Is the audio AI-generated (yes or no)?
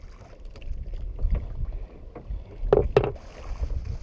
no